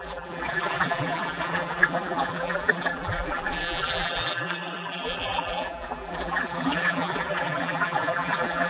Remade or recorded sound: remade